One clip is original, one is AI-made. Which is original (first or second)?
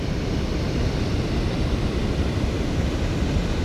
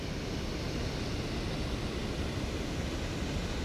second